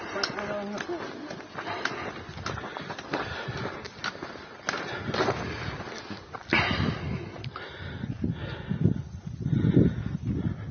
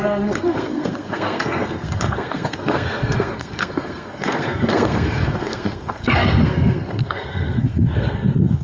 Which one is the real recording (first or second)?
first